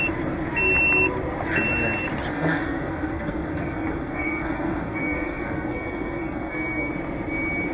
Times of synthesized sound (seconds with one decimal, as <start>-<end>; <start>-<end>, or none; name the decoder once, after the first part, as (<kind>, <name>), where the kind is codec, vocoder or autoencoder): 2.3-6.9 (codec, SNAC)